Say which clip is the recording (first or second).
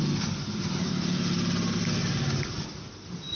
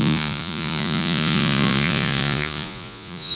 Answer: first